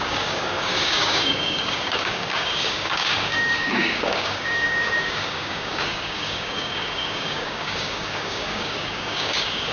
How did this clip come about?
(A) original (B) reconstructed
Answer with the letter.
B